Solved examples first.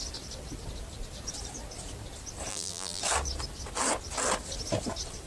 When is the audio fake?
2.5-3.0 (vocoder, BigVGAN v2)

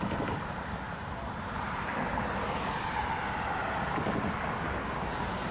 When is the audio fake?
none